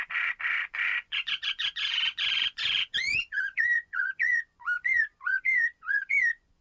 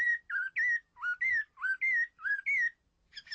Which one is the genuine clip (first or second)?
second